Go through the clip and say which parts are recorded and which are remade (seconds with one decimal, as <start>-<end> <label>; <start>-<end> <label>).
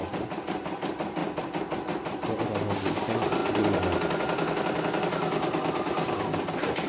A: 0.0-6.9 recorded